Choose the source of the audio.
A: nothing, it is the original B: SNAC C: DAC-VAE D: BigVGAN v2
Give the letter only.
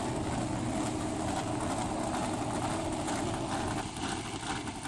A